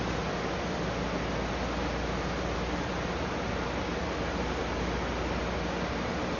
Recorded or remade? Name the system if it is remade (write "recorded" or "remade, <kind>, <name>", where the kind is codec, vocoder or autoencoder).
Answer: recorded